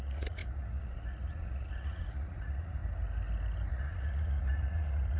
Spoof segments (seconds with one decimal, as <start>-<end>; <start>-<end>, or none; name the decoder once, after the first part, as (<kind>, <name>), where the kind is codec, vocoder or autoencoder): 0.0-2.8 (vocoder, Vocos); 3.7-5.2